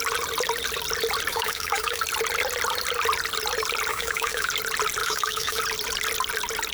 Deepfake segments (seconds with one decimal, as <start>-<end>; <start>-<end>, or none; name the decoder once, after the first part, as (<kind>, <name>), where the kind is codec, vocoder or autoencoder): 1.3-2.0 (autoencoder, DAC-VAE); 3.9-4.5; 5.0-5.6